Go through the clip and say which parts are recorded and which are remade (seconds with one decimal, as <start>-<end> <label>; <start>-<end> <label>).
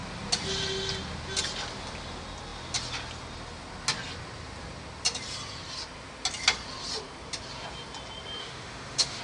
0.0-8.4 recorded; 8.4-9.2 remade